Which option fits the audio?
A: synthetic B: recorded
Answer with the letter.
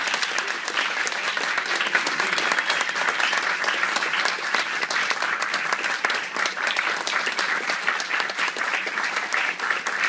B